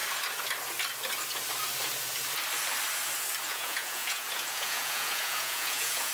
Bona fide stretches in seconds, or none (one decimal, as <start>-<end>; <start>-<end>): 0.0-3.5